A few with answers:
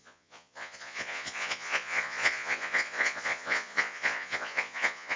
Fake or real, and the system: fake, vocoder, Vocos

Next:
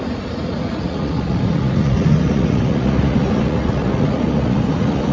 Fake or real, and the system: fake, vocoder, Vocos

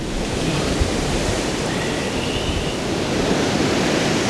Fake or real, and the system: real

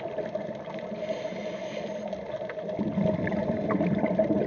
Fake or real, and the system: real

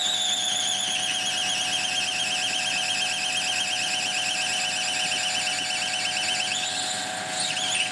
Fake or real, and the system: real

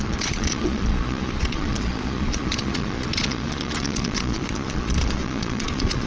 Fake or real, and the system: fake, vocoder, Vocos